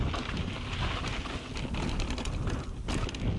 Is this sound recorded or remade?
recorded